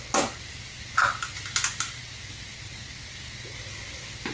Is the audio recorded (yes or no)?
yes